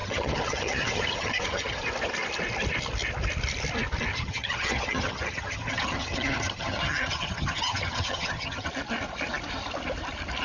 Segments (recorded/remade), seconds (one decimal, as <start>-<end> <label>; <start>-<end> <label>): 0.0-1.8 remade; 1.8-4.1 recorded; 4.1-8.7 remade; 8.7-10.4 recorded